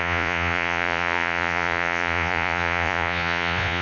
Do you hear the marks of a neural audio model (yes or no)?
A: yes